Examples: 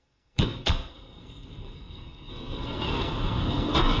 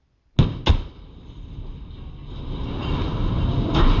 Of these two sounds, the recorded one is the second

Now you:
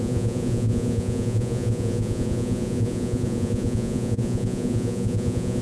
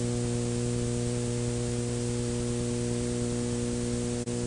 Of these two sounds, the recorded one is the second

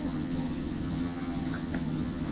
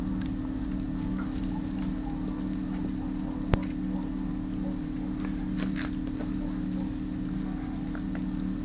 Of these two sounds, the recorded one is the second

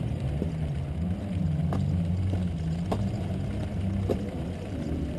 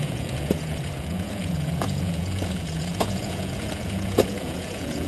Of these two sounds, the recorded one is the first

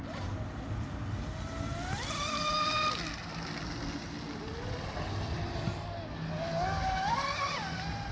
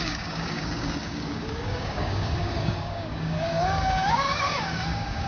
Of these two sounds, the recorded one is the first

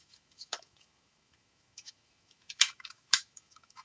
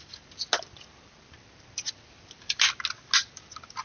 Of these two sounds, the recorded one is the second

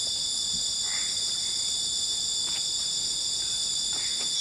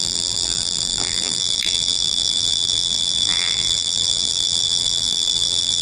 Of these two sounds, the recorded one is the first